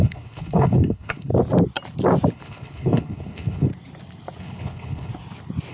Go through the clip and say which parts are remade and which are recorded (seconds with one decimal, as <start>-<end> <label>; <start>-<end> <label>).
0.0-1.3 remade; 1.3-2.3 recorded; 2.3-3.7 remade; 3.7-4.4 recorded; 4.4-5.1 remade; 5.1-5.7 recorded